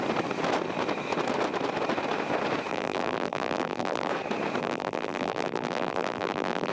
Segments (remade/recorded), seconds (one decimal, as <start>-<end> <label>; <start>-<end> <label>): 0.0-2.7 recorded; 2.7-4.1 remade; 4.1-4.6 recorded; 4.6-6.7 remade